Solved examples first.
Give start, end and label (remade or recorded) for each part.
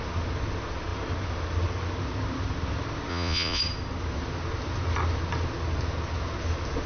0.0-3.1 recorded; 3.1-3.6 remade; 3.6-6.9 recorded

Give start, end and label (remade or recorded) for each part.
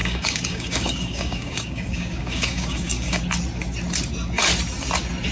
0.0-3.2 remade; 3.2-5.3 recorded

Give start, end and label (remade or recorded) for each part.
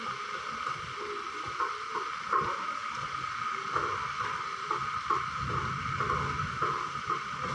0.0-7.5 recorded